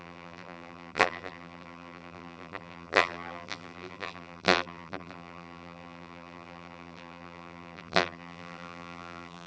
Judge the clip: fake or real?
fake